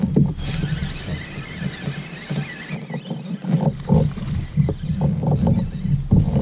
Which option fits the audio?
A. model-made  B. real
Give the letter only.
B